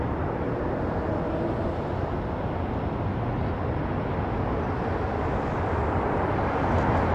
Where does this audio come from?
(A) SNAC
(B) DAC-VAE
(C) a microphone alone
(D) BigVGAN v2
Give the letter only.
C